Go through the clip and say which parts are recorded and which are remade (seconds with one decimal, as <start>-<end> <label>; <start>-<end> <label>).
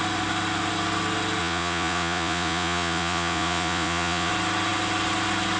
0.0-1.4 recorded; 1.4-4.3 remade; 4.3-5.6 recorded